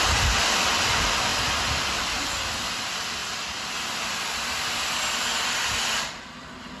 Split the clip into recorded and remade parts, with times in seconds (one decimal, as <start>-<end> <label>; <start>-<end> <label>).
0.0-1.3 remade; 1.3-1.9 recorded; 1.9-3.2 remade; 3.2-5.1 recorded; 5.1-6.8 remade